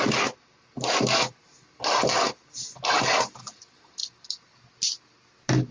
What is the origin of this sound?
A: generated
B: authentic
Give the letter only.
B